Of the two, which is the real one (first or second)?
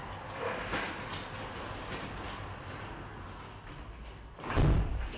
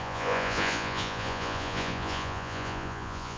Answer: first